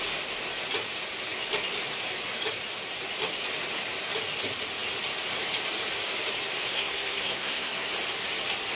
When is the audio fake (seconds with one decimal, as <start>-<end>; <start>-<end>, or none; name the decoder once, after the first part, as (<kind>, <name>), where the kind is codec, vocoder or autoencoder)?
6.7-7.9 (codec, SNAC)